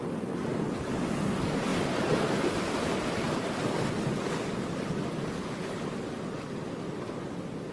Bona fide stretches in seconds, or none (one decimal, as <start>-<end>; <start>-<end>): 0.0-7.7